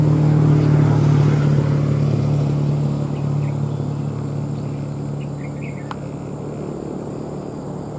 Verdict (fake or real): real